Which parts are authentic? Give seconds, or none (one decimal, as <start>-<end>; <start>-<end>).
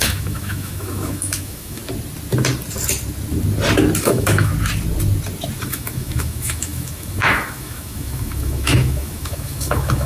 1.8-4.0; 4.5-5.6